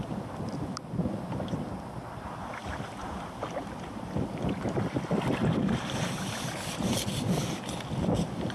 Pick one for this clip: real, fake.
real